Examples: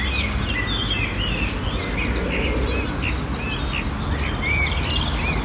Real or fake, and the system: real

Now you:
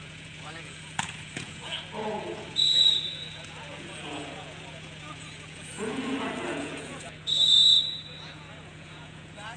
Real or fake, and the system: fake, vocoder, Vocos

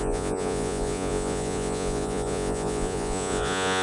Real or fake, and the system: fake, vocoder, Vocos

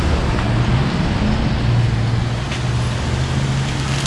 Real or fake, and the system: real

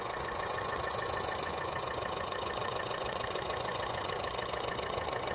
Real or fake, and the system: fake, vocoder, Vocos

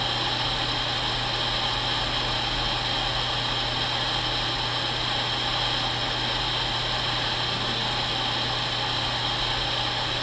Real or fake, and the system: real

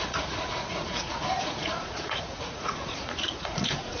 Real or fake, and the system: fake, vocoder, Vocos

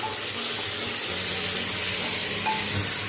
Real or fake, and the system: real